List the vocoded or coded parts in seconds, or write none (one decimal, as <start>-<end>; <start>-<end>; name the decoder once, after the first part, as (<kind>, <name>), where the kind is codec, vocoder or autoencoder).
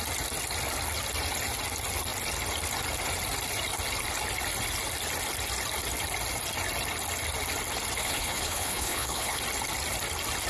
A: 8.0-9.4 (codec, HILCodec)